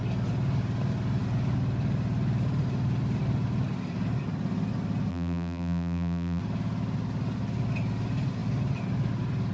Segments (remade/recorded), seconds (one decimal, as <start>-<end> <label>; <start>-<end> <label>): 0.0-5.1 recorded; 5.1-6.4 remade; 6.4-9.5 recorded